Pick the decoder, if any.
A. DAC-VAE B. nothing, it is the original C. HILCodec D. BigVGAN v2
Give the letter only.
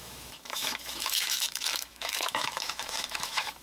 A